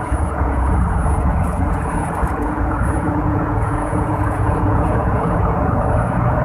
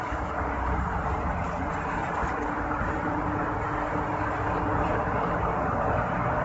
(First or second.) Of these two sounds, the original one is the second